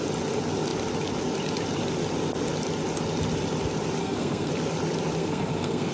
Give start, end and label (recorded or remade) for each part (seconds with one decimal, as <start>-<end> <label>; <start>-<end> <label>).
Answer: 0.0-4.0 recorded; 4.0-4.5 remade; 4.5-5.2 recorded; 5.2-5.9 remade